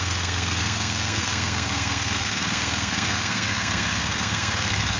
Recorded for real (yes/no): no